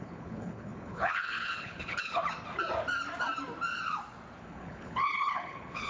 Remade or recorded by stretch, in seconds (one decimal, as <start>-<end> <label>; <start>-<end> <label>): 0.0-2.2 remade; 2.2-4.4 recorded; 4.4-5.9 remade